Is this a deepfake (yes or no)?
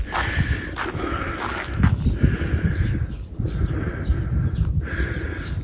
no